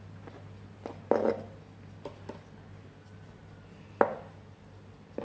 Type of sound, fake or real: real